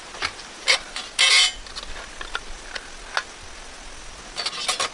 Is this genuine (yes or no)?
yes